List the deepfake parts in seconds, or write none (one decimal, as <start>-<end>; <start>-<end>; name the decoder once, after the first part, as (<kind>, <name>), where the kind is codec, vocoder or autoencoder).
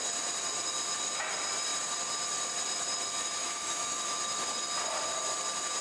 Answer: 3.4-4.2 (autoencoder, DAC-VAE)